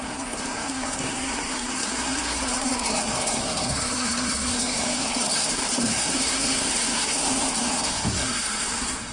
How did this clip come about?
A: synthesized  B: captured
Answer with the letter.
A